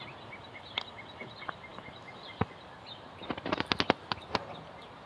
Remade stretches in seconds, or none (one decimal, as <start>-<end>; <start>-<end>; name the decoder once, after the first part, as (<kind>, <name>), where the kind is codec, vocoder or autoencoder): none